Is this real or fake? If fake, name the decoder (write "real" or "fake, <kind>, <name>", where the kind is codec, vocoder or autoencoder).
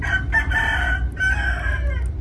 real